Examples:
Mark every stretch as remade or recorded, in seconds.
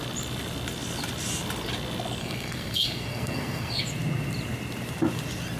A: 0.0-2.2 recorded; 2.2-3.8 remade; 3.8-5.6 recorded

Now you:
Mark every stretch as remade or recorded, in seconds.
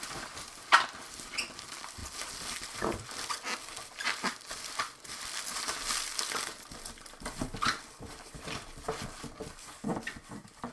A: 0.0-10.7 recorded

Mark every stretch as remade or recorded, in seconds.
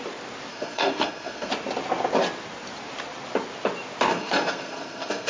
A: 0.0-0.5 recorded; 0.5-1.5 remade; 1.5-4.1 recorded; 4.1-5.3 remade